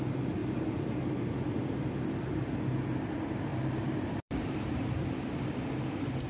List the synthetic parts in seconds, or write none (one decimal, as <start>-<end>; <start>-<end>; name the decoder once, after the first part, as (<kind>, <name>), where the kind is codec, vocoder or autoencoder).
0.4-1.3 (vocoder, BigVGAN v2); 3.5-5.7